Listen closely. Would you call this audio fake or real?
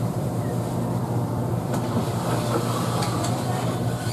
fake